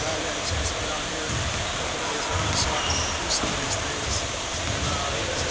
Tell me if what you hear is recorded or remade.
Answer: remade